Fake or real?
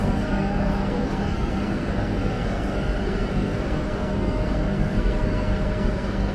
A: fake